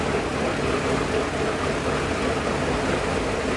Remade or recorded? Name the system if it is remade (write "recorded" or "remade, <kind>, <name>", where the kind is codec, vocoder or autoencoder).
recorded